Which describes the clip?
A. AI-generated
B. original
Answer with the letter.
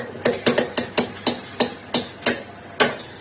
B